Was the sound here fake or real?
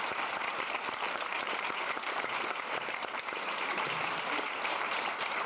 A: fake